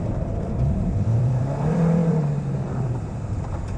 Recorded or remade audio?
remade